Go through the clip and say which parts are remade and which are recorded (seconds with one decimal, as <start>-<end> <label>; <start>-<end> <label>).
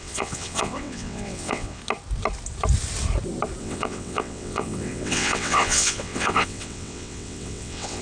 0.0-1.8 remade; 1.8-3.6 recorded; 3.6-8.0 remade